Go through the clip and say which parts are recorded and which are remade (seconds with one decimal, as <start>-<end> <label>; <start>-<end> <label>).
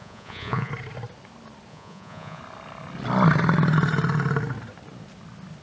0.0-0.7 remade; 0.7-1.7 recorded; 1.7-2.4 remade; 2.4-5.6 recorded